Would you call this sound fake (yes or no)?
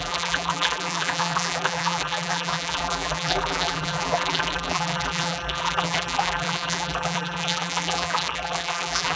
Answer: yes